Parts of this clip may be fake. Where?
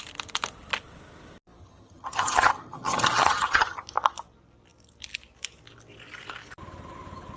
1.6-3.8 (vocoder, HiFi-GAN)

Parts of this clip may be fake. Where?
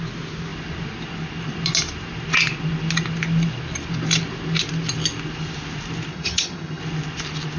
6.1-6.8 (vocoder, HiFi-GAN)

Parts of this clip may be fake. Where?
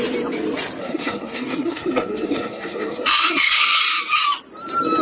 0.8-3.8 (codec, SNAC)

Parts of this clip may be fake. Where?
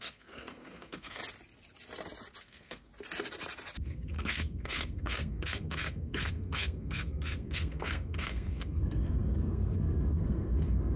0.0-1.2 (codec, SNAC); 2.4-2.9; 3.8-11.0